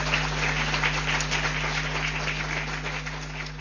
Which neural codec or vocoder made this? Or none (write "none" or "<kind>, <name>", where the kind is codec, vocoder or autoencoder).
none